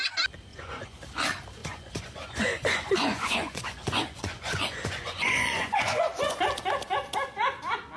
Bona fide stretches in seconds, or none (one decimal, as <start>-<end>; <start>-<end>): 0.0-0.5; 1.0-1.6; 6.4-8.0